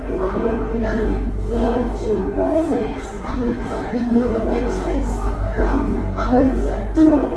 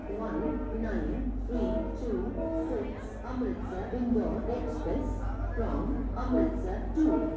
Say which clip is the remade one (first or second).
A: first